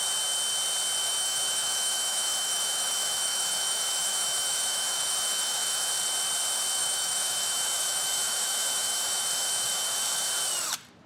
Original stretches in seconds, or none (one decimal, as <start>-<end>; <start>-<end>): 0.0-1.0; 5.9-6.8; 10.3-11.1